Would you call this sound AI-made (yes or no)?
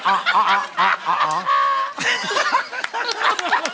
no